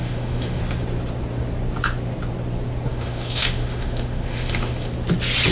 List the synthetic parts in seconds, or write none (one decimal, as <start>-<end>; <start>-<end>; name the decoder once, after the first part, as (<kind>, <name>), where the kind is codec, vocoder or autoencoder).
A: 0.0-0.6 (autoencoder, DAC-VAE); 2.9-4.9